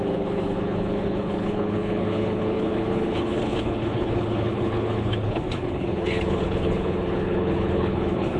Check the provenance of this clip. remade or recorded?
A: remade